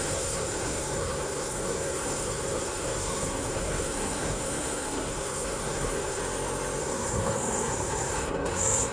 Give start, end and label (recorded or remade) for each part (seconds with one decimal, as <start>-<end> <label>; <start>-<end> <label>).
0.0-6.2 remade; 6.2-6.8 recorded; 6.8-8.9 remade